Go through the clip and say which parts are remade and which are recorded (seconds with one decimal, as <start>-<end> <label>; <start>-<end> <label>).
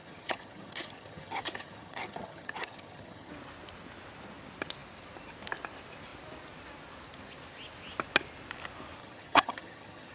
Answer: 0.0-3.3 remade; 3.3-9.0 recorded; 9.0-10.1 remade